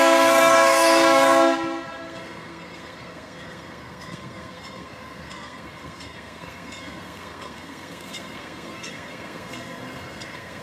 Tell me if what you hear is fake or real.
fake